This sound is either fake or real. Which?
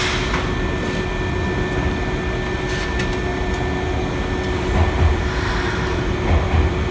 real